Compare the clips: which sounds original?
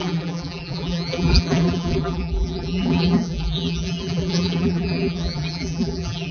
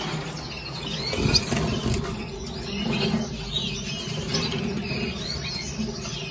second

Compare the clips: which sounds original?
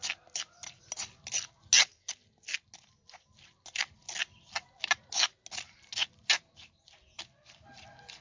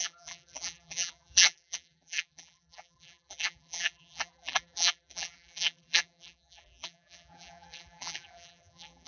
first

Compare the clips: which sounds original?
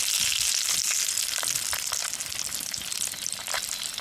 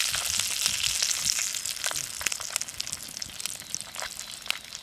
second